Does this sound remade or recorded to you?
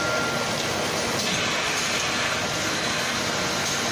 recorded